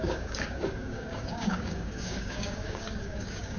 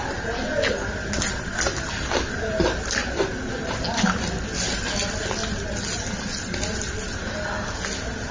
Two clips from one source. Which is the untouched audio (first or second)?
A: second